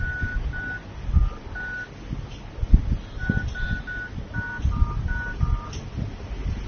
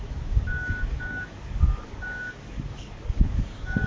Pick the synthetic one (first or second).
second